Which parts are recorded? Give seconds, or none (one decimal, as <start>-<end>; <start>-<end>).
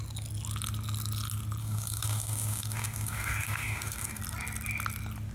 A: 0.0-1.6; 4.2-5.3